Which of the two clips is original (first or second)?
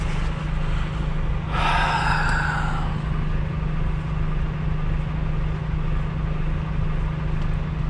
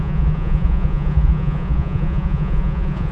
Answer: first